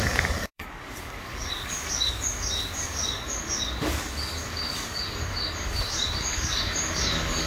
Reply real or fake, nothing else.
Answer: fake